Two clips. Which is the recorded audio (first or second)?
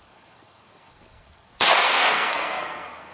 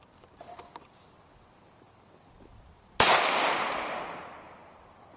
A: second